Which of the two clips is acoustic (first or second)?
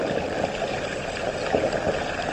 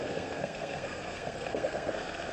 first